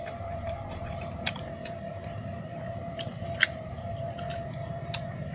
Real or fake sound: fake